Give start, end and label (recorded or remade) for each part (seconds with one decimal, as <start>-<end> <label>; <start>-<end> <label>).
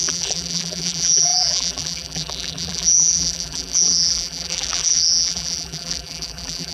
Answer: 0.0-6.7 remade